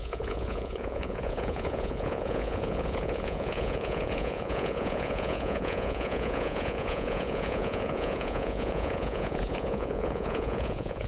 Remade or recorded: remade